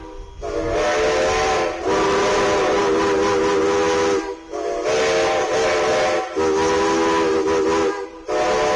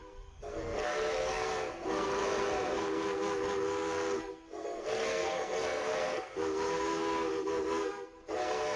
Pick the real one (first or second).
first